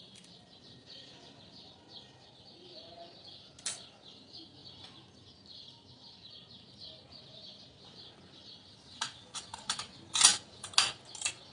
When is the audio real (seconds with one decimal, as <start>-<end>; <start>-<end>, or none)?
0.0-11.5

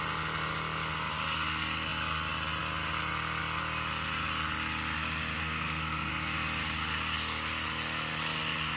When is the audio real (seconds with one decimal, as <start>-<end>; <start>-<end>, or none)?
0.0-5.4; 6.1-8.8

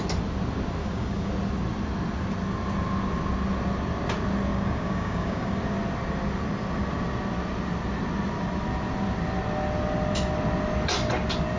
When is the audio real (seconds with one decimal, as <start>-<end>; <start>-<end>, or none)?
0.0-0.8; 1.3-4.5; 5.6-11.6

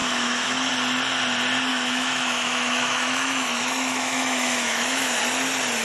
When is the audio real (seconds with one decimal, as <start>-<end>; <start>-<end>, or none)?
0.7-1.7; 5.2-5.8